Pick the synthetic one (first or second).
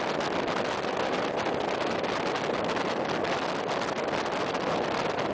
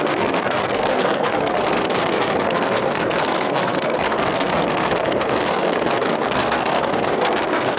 second